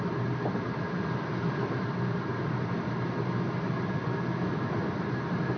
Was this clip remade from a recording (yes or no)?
no